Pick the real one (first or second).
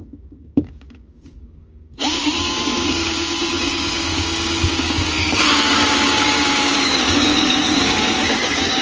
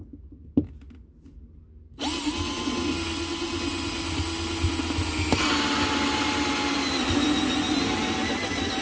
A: second